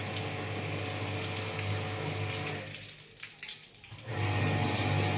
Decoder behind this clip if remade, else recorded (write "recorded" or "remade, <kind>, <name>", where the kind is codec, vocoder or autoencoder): recorded